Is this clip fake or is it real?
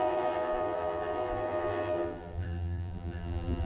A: fake